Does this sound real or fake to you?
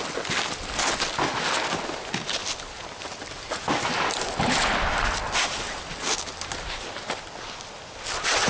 real